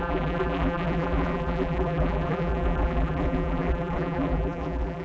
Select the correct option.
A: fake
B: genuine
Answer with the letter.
A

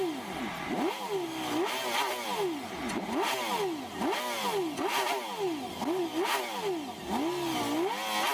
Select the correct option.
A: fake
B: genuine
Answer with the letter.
B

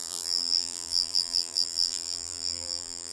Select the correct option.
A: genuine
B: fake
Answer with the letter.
B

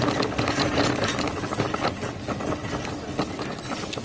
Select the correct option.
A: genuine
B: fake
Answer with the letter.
A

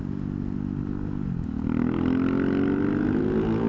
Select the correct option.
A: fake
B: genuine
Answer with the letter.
B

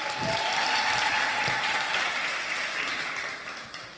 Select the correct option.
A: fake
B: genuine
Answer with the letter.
B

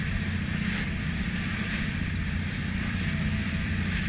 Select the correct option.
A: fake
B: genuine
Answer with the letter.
A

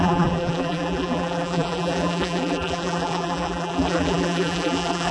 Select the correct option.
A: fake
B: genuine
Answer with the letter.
A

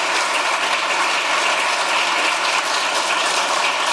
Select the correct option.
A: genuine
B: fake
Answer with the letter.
A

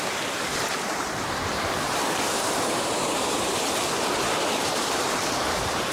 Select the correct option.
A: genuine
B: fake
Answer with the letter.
B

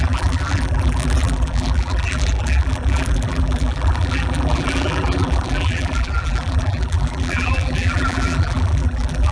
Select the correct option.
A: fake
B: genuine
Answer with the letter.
A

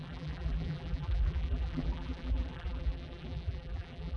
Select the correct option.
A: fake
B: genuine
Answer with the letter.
A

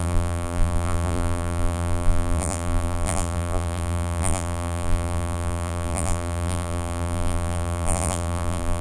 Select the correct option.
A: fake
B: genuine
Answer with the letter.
A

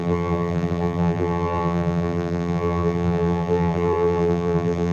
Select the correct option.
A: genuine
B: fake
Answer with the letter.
B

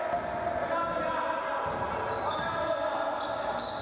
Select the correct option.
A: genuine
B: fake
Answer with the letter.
A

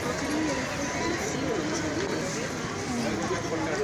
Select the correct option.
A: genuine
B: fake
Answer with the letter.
A